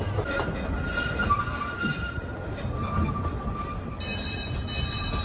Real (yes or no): yes